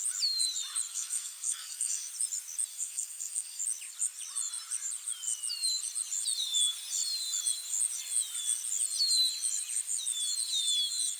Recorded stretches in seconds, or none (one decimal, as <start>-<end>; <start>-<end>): 0.0-0.9; 2.1-2.7; 3.6-11.2

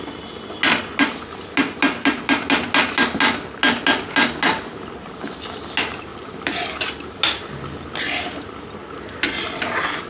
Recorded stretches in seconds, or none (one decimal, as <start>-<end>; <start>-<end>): 0.0-10.1

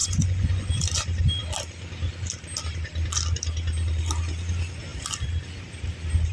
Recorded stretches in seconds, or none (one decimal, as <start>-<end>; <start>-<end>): 0.7-6.3

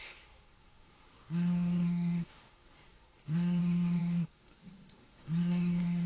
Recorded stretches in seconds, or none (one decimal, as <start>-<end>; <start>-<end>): none

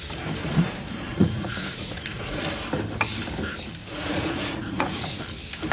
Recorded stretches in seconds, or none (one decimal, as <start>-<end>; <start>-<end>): 0.0-0.4; 2.4-3.8; 5.2-5.7

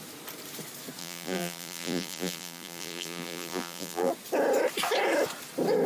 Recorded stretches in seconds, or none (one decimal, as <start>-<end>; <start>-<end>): 0.0-1.0; 4.1-5.9

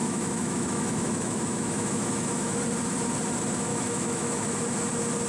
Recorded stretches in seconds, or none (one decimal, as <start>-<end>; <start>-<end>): 2.6-3.7; 4.6-5.3

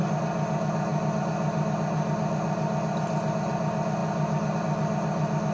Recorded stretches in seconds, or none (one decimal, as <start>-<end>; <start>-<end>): 0.0-5.5